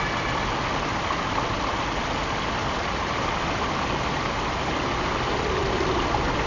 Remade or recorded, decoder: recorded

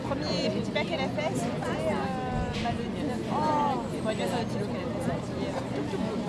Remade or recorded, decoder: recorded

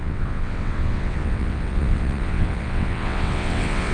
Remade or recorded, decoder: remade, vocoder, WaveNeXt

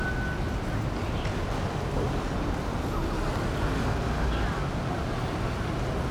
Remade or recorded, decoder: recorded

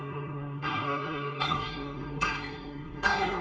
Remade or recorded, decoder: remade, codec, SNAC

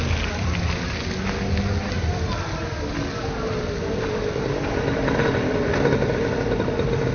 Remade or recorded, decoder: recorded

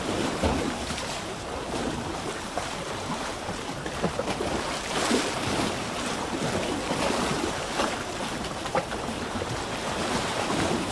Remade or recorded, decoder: remade, vocoder, BigVGAN v2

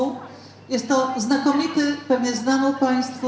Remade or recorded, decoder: recorded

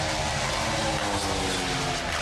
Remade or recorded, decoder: recorded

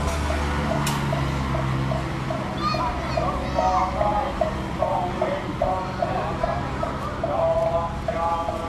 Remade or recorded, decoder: recorded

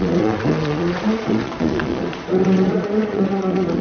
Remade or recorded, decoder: remade, vocoder, Vocos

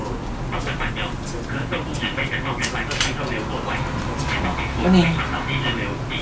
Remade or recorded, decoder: recorded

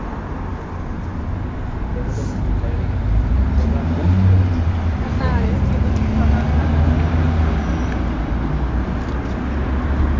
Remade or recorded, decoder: recorded